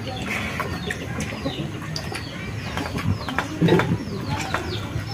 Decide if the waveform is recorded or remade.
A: recorded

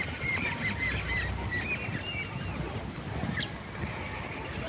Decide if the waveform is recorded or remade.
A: recorded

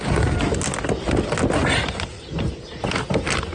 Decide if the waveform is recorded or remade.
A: recorded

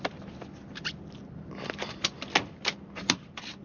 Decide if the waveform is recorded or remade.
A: recorded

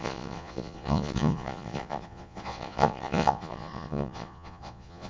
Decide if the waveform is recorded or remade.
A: remade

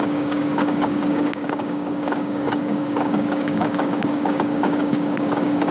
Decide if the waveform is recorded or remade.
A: remade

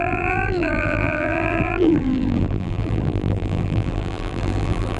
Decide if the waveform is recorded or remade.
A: remade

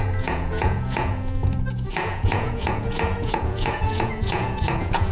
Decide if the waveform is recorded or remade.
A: remade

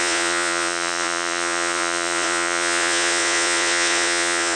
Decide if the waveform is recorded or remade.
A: remade